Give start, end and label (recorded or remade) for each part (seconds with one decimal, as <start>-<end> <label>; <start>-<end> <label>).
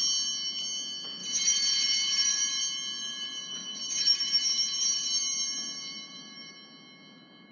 0.0-1.2 recorded; 1.2-2.6 remade; 2.6-3.0 recorded; 3.0-6.5 remade; 6.5-7.5 recorded